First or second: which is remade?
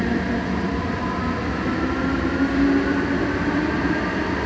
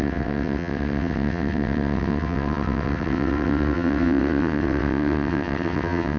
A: second